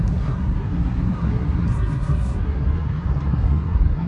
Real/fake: fake